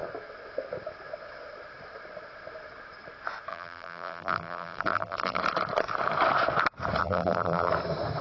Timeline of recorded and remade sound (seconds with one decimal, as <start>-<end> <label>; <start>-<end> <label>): 0.0-3.5 recorded; 3.5-5.4 remade; 5.4-7.0 recorded; 7.0-7.7 remade; 7.7-8.2 recorded